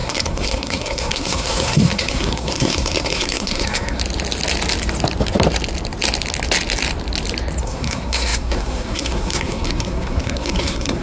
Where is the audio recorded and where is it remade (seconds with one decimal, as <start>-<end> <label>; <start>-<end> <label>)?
0.0-4.0 remade; 4.0-7.6 recorded; 7.6-11.0 remade